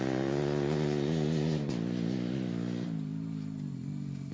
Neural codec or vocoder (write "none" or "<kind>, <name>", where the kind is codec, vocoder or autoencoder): none